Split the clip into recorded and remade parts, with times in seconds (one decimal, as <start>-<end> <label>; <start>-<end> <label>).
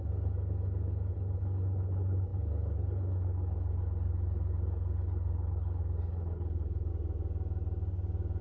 0.0-6.9 remade; 6.9-8.4 recorded